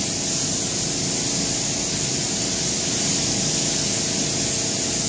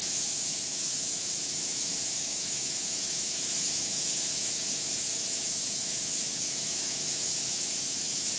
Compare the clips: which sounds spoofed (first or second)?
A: second